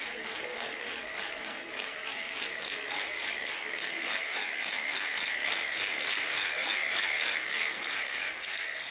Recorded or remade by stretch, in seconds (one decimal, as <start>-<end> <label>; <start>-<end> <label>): 0.0-8.9 remade